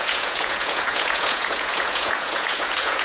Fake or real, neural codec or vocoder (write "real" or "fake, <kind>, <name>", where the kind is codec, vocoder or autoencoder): fake, vocoder, Vocos